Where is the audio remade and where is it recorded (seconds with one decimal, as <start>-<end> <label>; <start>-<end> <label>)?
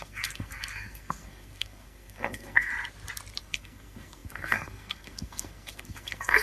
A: 0.0-2.7 remade; 2.7-3.4 recorded; 3.4-6.4 remade